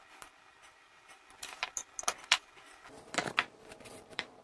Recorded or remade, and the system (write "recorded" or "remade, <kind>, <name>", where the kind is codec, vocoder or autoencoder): remade, vocoder, BigVGAN v2